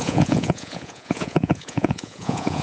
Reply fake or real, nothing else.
fake